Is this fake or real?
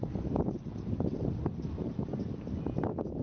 real